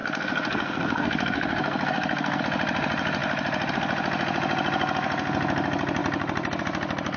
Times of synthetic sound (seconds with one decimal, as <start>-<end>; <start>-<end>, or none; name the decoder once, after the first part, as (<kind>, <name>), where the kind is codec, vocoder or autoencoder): 0.0-2.4 (codec, SNAC)